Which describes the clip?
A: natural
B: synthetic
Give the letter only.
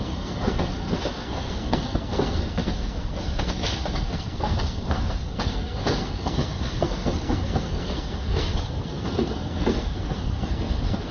B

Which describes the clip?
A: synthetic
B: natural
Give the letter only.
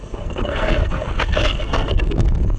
A